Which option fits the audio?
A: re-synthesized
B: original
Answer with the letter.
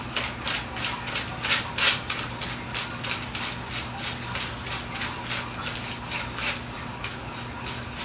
B